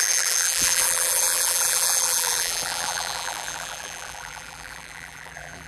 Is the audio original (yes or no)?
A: no